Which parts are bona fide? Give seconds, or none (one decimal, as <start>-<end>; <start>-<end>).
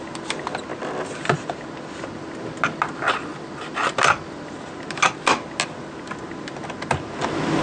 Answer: 0.0-7.6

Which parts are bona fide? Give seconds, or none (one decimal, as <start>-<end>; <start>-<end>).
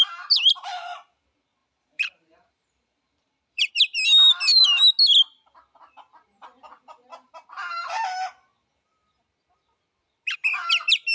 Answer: 0.0-1.6; 3.7-7.1; 8.3-11.1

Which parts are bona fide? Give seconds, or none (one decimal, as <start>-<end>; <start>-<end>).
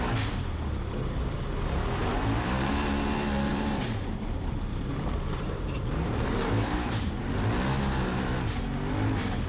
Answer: 0.0-2.0; 2.7-3.5; 7.3-9.5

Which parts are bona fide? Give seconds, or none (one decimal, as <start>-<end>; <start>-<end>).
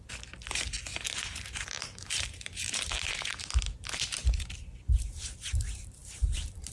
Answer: 0.0-0.9; 3.5-6.0